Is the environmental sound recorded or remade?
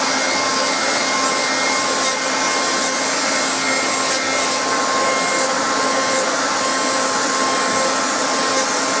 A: recorded